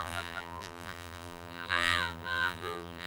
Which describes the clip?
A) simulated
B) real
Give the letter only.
A